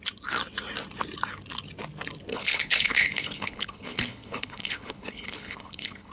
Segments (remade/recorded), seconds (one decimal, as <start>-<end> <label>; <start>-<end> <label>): 0.0-2.3 recorded; 2.3-6.1 remade